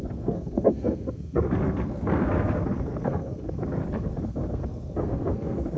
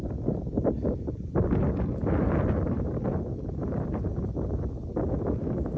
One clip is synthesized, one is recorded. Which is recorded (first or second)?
second